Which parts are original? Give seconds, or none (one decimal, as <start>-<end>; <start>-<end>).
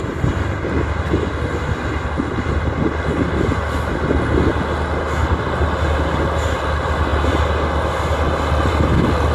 0.0-9.3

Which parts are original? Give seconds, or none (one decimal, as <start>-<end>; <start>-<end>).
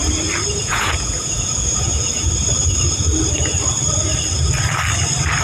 0.0-0.6; 2.3-5.4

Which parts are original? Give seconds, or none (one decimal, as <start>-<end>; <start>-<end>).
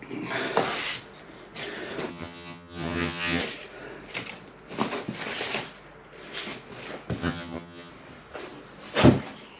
0.0-2.1; 3.4-7.2; 7.9-9.6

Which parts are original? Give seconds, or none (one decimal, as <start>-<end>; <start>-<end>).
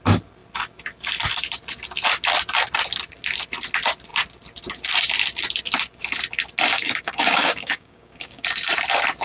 0.0-6.7; 8.4-9.2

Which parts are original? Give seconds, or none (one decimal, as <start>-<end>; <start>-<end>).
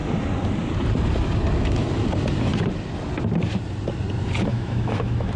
0.0-4.5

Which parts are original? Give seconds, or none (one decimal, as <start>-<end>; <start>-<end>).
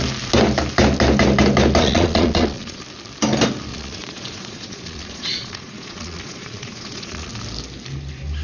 0.0-1.8; 2.8-3.7; 7.3-8.4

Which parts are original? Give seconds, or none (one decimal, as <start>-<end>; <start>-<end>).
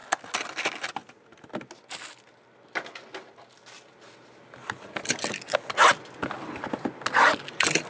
0.0-7.9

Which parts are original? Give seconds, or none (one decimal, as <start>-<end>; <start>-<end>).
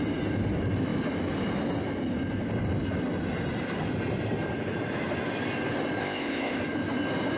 0.0-6.0; 6.6-7.4